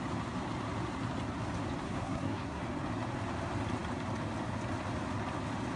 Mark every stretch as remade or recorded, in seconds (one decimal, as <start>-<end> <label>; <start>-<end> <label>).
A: 0.0-1.8 recorded; 1.8-2.6 remade; 2.6-5.8 recorded